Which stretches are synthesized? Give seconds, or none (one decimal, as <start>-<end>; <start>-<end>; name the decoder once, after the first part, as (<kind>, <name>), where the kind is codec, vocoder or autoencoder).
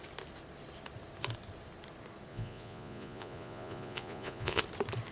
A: 2.3-4.6 (vocoder, Vocos)